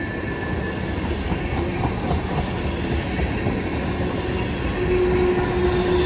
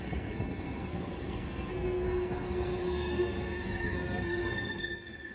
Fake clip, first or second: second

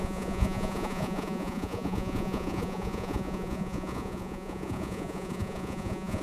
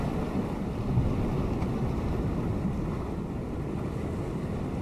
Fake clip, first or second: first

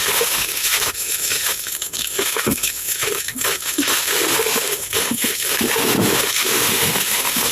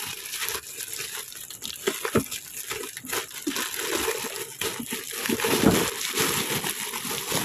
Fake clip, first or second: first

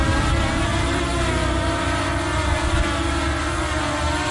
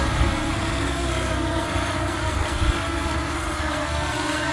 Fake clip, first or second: second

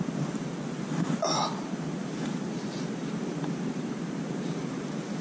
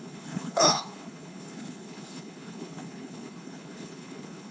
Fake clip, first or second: second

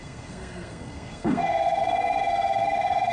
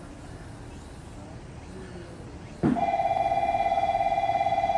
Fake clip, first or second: first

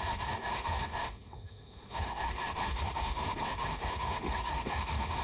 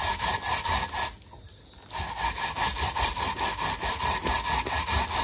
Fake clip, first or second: first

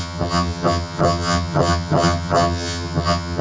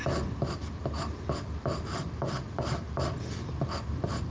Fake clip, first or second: first